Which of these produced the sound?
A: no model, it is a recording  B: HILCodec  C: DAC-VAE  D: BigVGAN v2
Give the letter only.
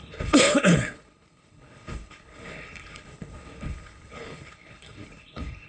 B